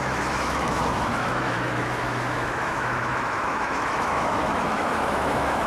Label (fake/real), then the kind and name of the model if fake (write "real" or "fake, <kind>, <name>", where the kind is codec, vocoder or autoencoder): fake, autoencoder, DAC-VAE